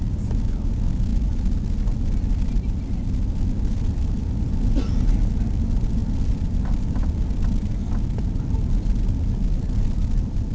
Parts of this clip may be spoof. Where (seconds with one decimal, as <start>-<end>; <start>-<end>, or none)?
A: none